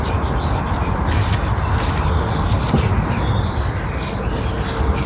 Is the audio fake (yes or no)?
no